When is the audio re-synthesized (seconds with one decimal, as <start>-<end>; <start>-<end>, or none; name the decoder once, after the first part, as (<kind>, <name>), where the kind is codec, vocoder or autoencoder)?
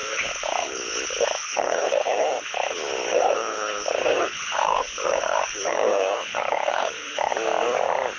0.0-7.3 (codec, HILCodec)